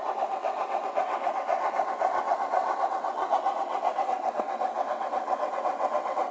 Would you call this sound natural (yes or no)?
no